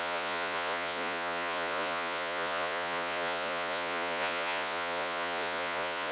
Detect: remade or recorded remade